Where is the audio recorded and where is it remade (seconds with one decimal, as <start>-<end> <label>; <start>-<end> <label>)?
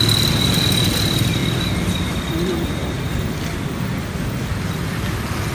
0.0-5.5 recorded